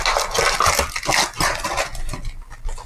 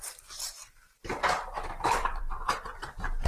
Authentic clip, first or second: first